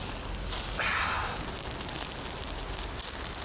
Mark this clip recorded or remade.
recorded